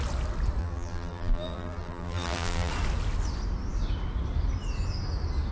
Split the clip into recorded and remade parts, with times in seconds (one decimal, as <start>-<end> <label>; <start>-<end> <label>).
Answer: 0.0-0.6 recorded; 0.6-2.7 remade; 2.7-5.5 recorded